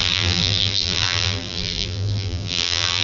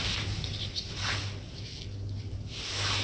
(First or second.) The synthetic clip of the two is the first